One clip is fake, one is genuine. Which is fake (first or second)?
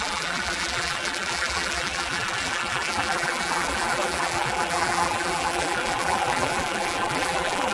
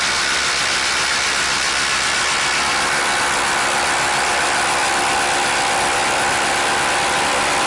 first